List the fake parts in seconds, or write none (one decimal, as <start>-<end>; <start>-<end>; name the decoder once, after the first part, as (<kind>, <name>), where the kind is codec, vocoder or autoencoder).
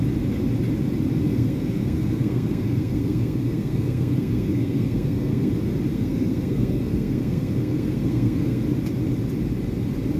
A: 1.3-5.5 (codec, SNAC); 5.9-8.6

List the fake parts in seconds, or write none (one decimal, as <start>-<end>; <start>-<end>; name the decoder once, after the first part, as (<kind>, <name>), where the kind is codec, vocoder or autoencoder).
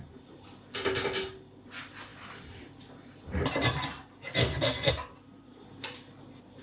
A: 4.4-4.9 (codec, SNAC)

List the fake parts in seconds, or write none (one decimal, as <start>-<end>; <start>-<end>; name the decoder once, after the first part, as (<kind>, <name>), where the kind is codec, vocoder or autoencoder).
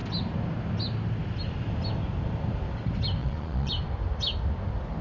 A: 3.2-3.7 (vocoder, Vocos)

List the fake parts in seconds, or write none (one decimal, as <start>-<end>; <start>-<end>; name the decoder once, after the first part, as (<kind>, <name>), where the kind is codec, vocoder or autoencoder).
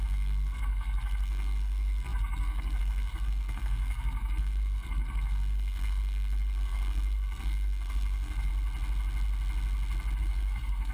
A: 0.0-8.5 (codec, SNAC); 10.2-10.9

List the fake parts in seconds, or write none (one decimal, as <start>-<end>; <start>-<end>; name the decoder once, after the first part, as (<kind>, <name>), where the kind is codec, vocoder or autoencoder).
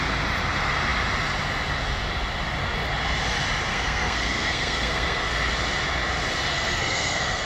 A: 3.7-5.4 (codec, SNAC); 6.5-7.5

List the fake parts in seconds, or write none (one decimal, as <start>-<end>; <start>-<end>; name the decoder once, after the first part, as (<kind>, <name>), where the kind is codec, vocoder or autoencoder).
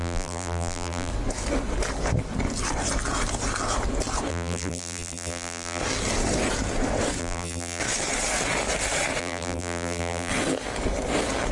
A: 0.0-1.1 (vocoder, BigVGAN v2); 4.3-5.8; 7.2-7.8; 9.2-10.3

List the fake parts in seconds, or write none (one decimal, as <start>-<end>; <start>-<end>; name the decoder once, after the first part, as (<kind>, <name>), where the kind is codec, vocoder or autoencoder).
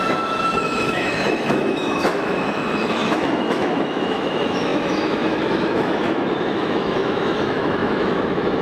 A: 0.0-8.6 (autoencoder, DAC-VAE)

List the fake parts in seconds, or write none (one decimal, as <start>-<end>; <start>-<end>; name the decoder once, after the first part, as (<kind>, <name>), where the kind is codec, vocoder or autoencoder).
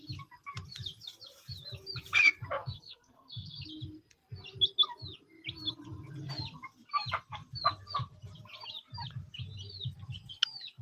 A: 2.6-3.6 (codec, SNAC)